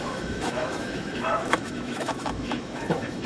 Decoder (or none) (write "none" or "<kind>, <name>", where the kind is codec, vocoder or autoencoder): autoencoder, DAC-VAE